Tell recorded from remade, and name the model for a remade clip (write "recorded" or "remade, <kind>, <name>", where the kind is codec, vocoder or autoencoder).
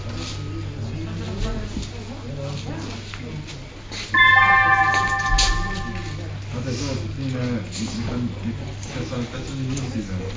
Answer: recorded